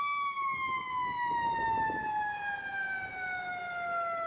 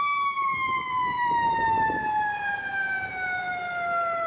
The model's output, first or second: second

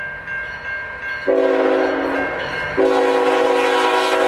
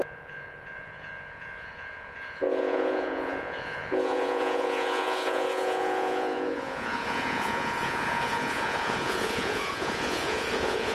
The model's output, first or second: second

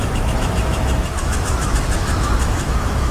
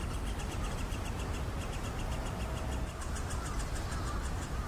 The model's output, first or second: first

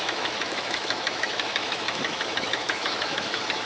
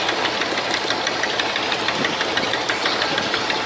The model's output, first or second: first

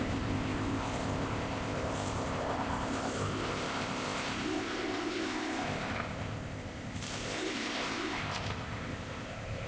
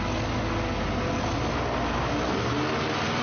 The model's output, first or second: first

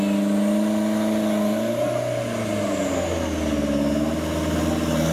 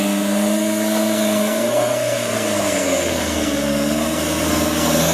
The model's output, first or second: second